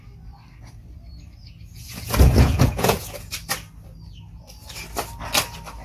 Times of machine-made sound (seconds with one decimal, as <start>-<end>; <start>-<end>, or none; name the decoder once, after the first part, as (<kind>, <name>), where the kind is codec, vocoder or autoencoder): 1.7-3.3 (vocoder, Vocos)